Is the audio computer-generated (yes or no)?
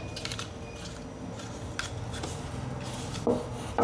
no